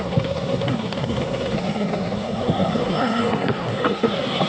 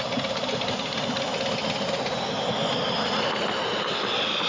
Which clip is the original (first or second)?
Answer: second